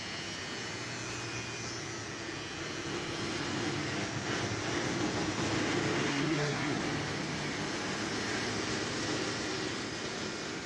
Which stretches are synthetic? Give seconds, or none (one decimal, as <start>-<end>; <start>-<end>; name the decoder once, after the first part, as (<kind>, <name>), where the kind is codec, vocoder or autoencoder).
6.1-6.8 (codec, SNAC)